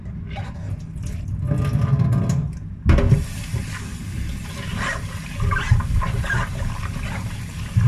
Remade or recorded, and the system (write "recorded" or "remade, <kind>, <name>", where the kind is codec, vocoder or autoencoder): recorded